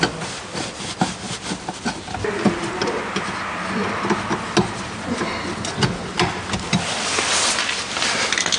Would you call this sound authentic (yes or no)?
yes